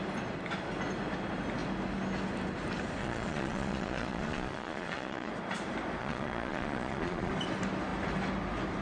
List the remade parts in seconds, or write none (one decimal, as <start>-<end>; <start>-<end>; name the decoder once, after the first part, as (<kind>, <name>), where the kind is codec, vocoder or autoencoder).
3.0-5.3 (vocoder, Vocos); 6.0-7.3